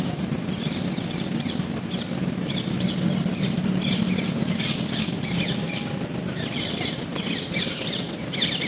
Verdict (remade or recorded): remade